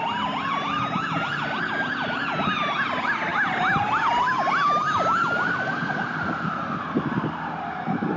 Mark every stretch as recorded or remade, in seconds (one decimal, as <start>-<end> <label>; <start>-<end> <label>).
0.0-8.2 recorded